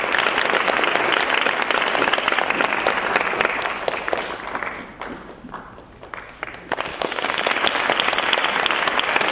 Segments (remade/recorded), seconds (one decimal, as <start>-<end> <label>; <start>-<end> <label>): 0.0-6.9 recorded; 6.9-7.5 remade; 7.5-9.3 recorded